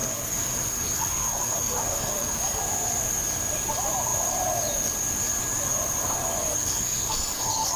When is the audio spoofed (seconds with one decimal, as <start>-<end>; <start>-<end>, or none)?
0.0-2.6; 6.4-7.8